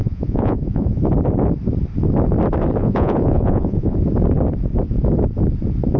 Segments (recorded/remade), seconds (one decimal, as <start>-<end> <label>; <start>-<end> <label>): 0.0-1.0 remade; 1.0-2.8 recorded; 2.8-4.0 remade; 4.0-6.0 recorded